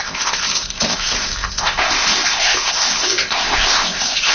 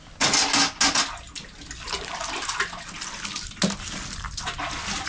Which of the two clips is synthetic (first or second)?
first